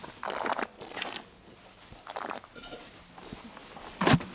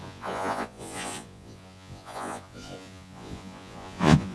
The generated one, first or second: second